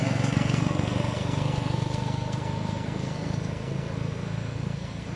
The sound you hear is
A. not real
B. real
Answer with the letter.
A